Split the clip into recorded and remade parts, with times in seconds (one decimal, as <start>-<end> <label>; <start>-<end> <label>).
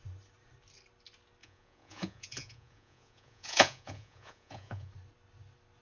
0.0-1.4 recorded; 1.4-4.9 remade; 4.9-5.8 recorded